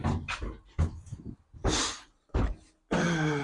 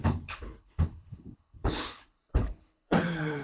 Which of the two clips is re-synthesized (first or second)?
second